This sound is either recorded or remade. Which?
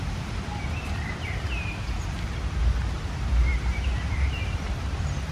remade